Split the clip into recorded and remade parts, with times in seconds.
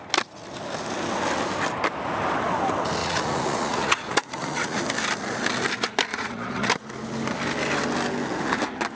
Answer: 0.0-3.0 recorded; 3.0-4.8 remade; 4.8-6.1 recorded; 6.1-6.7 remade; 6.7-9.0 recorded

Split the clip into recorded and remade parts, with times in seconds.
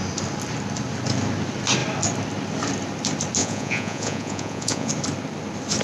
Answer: 0.0-3.4 recorded; 3.4-4.9 remade; 4.9-5.8 recorded